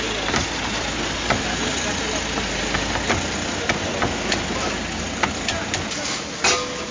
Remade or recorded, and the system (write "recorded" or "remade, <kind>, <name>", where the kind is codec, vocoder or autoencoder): recorded